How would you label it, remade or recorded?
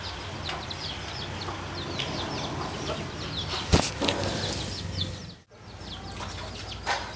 recorded